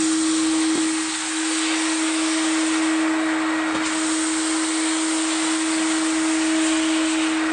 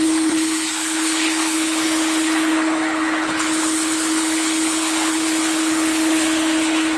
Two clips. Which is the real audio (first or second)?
first